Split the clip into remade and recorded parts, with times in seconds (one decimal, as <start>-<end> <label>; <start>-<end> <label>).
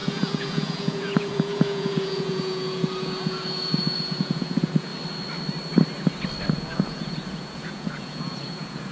0.0-4.9 remade; 4.9-6.5 recorded; 6.5-8.9 remade